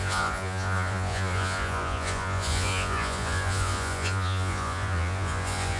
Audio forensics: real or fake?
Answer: fake